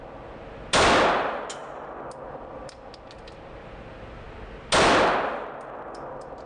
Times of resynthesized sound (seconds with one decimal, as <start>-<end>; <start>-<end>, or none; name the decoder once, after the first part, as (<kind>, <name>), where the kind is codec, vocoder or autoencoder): none